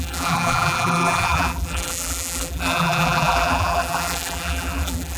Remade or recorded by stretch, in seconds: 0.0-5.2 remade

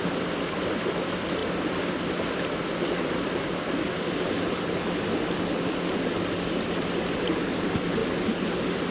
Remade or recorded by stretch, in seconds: 0.0-8.9 recorded

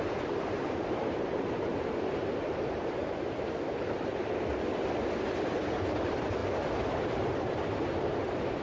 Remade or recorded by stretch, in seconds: 0.0-1.7 remade; 1.7-2.2 recorded; 2.2-3.0 remade; 3.0-5.5 recorded; 5.5-6.4 remade; 6.4-6.9 recorded; 6.9-8.6 remade

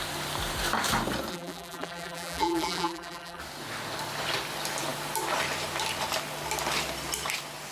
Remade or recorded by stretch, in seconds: 0.0-1.3 recorded; 1.3-3.4 remade; 3.4-7.7 recorded

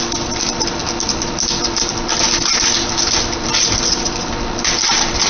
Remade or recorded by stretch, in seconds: 0.0-5.3 remade